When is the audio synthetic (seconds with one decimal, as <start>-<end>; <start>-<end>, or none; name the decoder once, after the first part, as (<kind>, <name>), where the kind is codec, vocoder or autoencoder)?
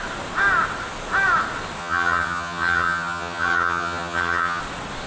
1.8-4.6 (vocoder, HiFi-GAN)